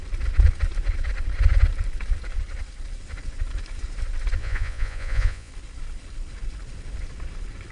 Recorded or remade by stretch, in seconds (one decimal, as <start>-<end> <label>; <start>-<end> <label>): 0.0-4.4 recorded; 4.4-5.5 remade; 5.5-7.7 recorded